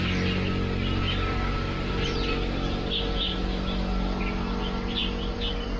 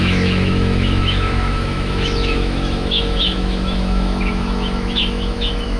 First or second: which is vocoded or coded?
second